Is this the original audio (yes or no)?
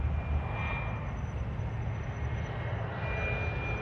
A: yes